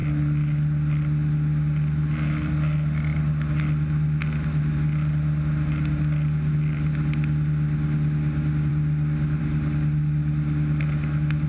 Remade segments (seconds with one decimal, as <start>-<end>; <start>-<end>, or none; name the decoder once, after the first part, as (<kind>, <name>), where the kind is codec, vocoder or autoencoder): none